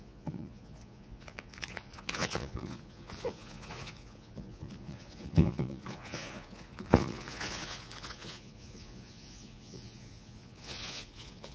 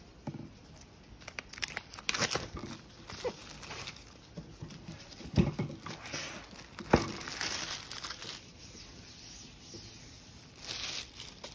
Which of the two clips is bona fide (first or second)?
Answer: second